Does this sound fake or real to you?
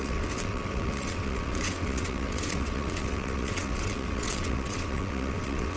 fake